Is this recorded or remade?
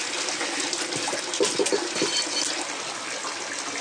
recorded